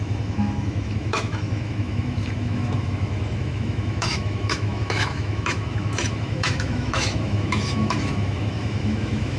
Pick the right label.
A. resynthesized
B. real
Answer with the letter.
A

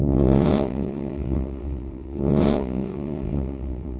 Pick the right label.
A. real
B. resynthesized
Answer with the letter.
B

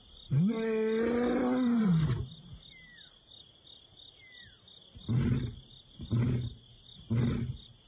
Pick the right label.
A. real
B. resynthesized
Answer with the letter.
A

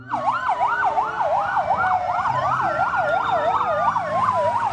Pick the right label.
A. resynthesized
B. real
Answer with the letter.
B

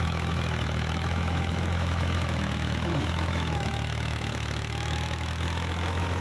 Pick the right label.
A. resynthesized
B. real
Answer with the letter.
A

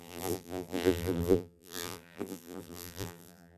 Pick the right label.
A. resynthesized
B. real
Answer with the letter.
A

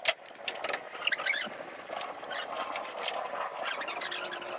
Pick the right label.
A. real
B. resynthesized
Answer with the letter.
A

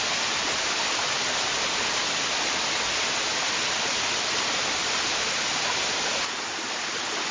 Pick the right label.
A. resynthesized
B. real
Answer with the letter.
B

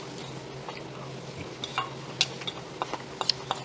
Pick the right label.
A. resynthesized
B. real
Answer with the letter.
B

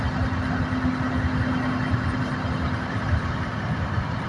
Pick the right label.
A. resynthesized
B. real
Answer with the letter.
B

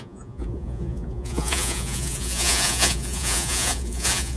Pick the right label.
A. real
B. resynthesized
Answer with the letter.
B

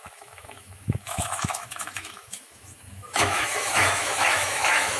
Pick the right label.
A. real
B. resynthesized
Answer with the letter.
B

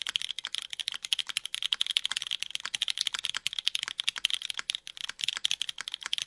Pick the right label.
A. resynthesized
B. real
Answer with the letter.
B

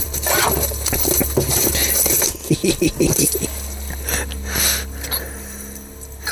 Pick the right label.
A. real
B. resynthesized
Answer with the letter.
A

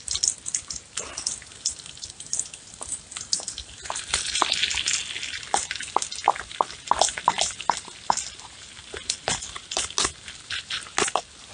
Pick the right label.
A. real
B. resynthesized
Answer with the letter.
A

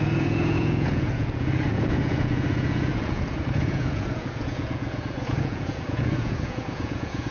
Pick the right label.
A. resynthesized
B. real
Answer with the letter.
A